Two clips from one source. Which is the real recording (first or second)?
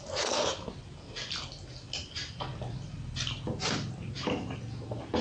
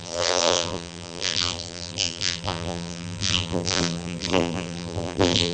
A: first